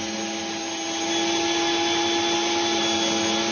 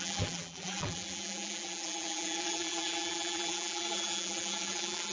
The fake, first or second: second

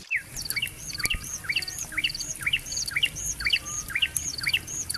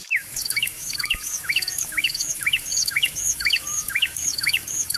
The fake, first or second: second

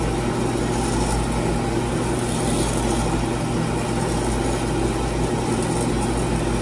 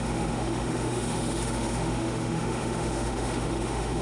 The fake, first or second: second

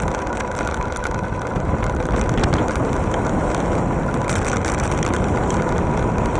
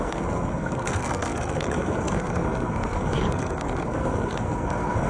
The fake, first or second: second